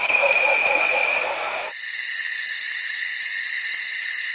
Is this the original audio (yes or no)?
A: no